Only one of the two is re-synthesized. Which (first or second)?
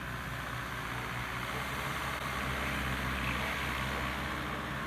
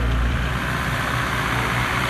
second